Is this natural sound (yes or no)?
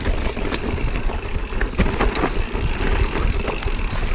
yes